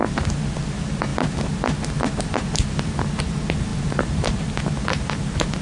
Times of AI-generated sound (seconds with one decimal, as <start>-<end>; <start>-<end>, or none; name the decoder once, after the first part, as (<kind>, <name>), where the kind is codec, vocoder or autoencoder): 3.7-4.4 (vocoder, BigVGAN v2)